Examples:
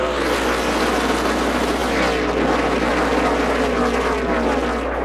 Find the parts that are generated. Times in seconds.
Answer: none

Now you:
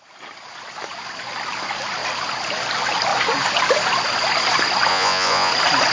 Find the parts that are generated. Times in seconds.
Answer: 4.9-5.5 (vocoder, Vocos)

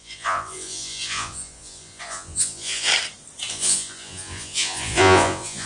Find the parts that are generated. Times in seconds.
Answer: 0.0-2.9 (vocoder, Vocos); 3.5-5.7